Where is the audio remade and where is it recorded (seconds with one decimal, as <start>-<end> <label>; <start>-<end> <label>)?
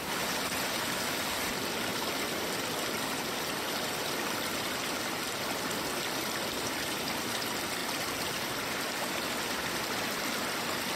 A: 0.0-1.9 recorded; 1.9-5.3 remade; 5.3-11.0 recorded